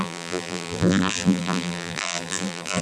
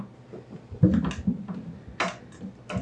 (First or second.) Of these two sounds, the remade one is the first